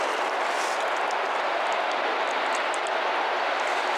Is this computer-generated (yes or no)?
no